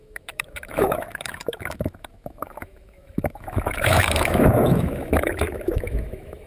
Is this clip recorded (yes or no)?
no